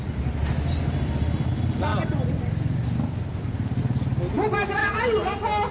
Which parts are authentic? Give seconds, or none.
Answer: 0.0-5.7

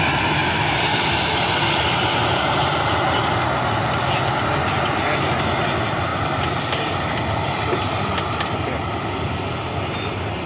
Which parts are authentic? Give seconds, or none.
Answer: 0.0-10.5